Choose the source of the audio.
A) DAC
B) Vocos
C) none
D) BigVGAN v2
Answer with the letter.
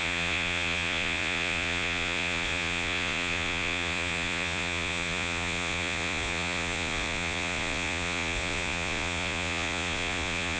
B